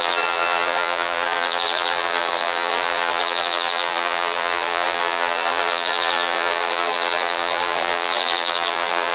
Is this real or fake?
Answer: fake